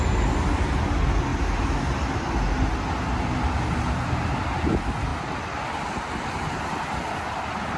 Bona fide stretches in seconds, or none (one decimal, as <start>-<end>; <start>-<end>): 0.0-5.1; 7.1-7.8